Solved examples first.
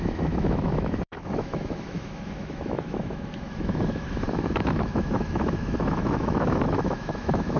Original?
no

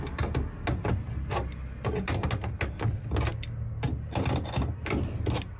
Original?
yes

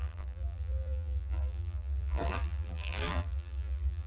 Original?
no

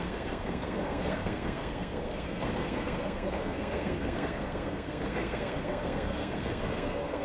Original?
no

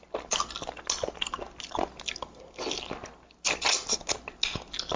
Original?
yes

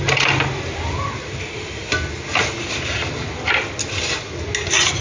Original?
yes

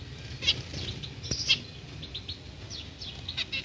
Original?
yes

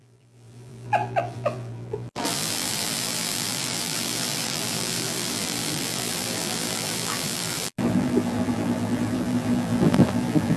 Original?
no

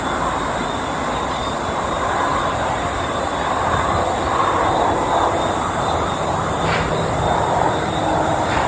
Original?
yes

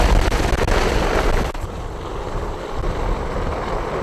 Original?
yes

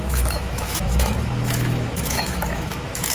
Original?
no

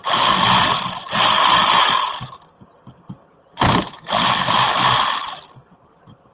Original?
yes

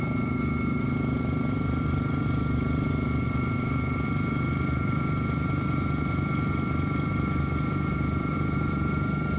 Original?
no